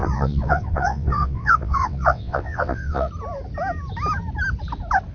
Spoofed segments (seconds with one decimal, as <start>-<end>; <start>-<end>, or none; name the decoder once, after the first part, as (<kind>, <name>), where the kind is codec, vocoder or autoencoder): 0.0-3.1 (vocoder, WaveNeXt)